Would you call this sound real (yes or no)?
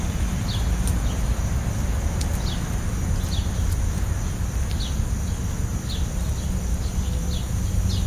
yes